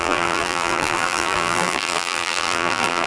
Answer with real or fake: fake